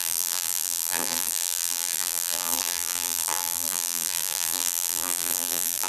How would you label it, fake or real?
fake